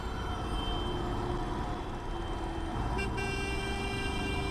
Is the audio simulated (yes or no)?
no